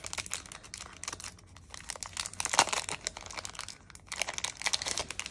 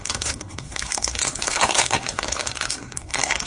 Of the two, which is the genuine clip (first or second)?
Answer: first